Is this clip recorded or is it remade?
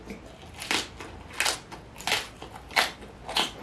recorded